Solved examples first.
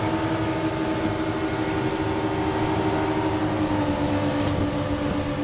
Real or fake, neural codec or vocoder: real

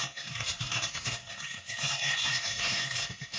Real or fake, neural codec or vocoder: fake, codec, SNAC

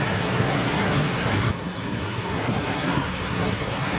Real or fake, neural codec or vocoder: fake, codec, SNAC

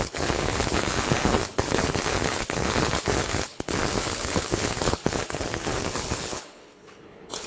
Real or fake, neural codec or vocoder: fake, codec, HILCodec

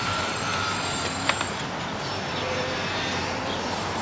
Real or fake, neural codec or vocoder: fake, vocoder, BigVGAN v2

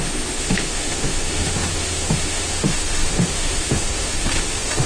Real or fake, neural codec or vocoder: fake, autoencoder, DAC-VAE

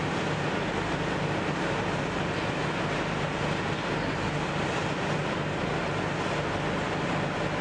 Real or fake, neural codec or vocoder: real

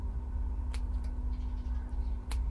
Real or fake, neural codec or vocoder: real